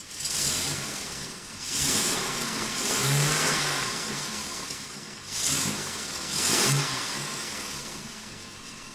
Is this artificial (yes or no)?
yes